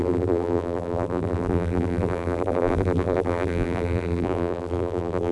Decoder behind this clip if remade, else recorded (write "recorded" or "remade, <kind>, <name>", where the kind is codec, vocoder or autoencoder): remade, vocoder, BigVGAN v2